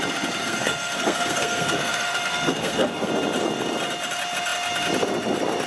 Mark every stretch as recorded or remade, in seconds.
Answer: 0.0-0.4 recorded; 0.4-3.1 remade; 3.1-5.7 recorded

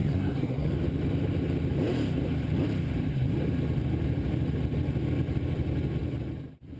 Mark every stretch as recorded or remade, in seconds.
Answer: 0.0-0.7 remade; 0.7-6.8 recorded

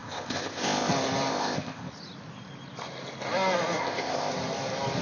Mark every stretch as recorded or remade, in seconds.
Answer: 0.0-0.9 remade; 0.9-1.3 recorded; 1.3-1.9 remade; 1.9-3.8 recorded; 3.8-4.3 remade; 4.3-5.0 recorded

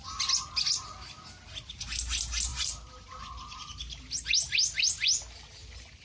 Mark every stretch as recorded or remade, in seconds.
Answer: 0.0-2.5 recorded; 2.5-3.2 remade; 3.2-6.0 recorded

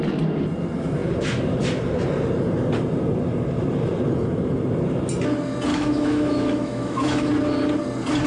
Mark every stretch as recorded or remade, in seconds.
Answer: 0.0-5.7 recorded; 5.7-7.3 remade; 7.3-8.3 recorded

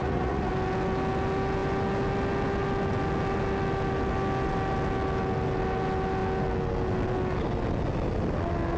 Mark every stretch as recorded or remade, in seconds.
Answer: 0.0-0.5 remade; 0.5-8.8 recorded

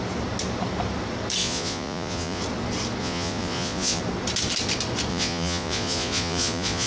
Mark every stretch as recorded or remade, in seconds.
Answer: 0.0-1.4 recorded; 1.4-2.4 remade; 2.4-3.0 recorded; 3.0-4.0 remade; 4.0-5.1 recorded; 5.1-6.9 remade

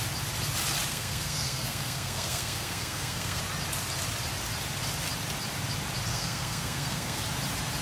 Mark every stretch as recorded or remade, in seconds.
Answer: 0.0-0.9 recorded; 0.9-3.4 remade; 3.4-6.1 recorded; 6.1-7.2 remade; 7.2-7.8 recorded